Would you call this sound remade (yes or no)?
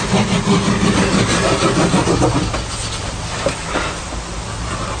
no